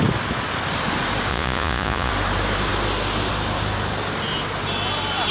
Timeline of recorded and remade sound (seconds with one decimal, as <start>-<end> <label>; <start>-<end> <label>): 0.0-1.3 recorded; 1.3-2.1 remade; 2.1-5.3 recorded